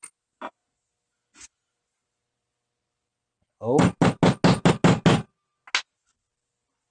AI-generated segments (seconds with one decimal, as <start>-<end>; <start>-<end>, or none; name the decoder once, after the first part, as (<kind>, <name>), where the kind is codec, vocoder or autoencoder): none